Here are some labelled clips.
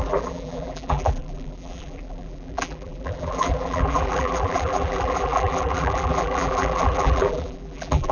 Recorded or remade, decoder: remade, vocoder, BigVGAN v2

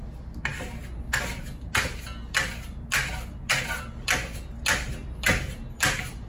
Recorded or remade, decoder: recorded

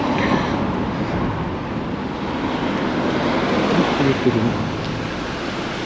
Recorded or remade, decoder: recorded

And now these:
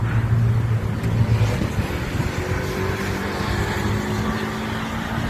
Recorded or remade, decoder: recorded